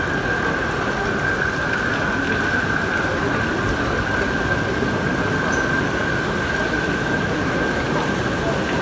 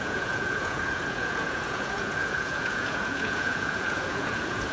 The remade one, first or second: second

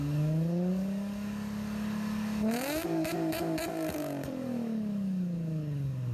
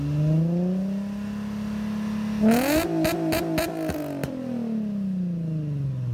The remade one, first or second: first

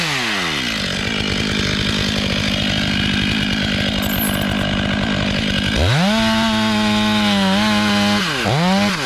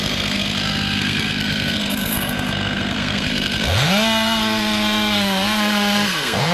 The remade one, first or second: second